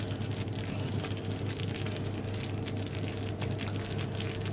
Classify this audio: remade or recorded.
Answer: remade